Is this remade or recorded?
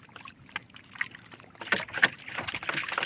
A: recorded